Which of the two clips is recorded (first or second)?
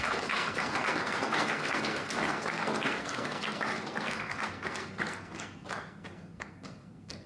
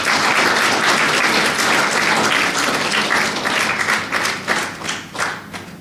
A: second